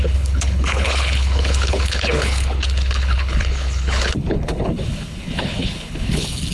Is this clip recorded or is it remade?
remade